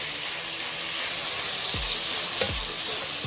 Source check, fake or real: real